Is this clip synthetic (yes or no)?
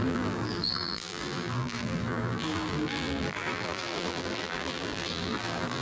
yes